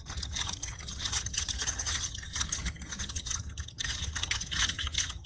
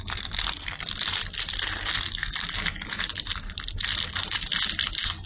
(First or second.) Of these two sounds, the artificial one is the first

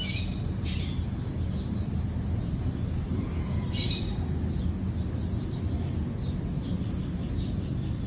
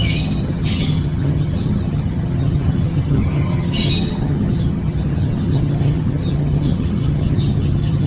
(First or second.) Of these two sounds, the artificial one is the second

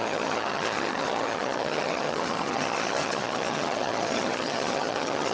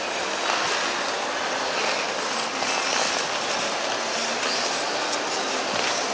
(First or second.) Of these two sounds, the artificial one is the first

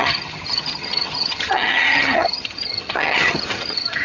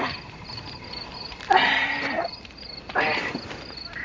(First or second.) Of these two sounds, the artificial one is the first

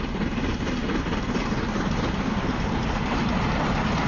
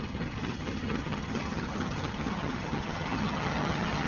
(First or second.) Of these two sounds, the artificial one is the second